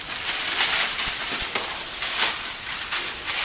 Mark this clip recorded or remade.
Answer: recorded